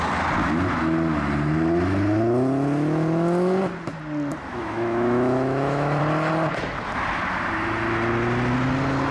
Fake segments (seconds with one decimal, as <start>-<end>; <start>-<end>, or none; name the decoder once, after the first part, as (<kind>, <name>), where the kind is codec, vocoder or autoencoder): 4.5-6.0 (autoencoder, DAC-VAE)